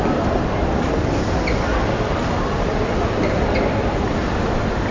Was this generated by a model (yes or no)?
no